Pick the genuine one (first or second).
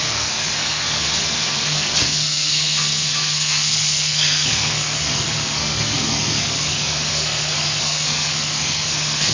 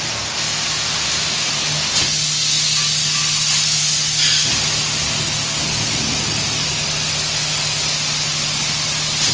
second